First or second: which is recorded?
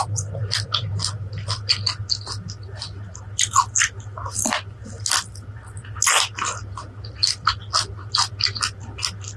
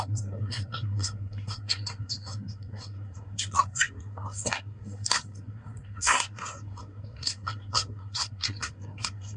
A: first